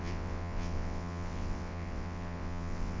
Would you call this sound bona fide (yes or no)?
no